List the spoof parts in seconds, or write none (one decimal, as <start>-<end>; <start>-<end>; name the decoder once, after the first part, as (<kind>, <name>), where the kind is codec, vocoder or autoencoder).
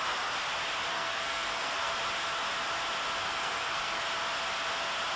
0.9-1.9 (codec, SNAC); 3.2-4.0